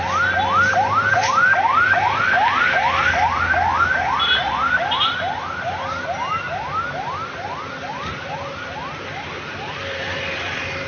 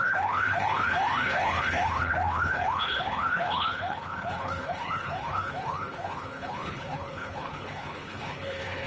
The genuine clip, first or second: first